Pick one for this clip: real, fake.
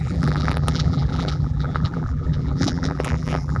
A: fake